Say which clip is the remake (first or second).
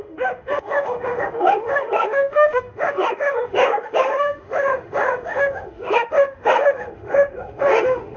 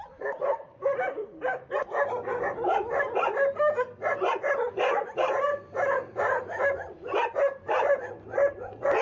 first